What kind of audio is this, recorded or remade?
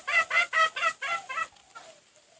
recorded